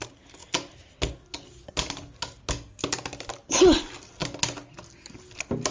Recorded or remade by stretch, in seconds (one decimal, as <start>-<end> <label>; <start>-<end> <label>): 0.0-5.7 recorded